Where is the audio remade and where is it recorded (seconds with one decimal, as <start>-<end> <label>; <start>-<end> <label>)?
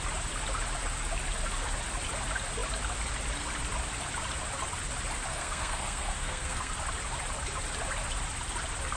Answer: 0.0-5.3 recorded; 5.3-6.7 remade; 6.7-9.0 recorded